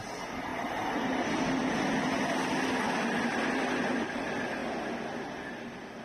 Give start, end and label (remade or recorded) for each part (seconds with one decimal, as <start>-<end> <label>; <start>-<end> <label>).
0.0-6.0 recorded